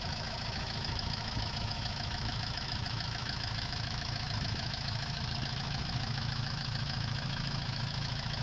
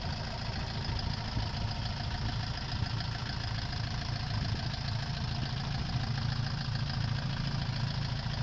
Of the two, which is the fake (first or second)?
first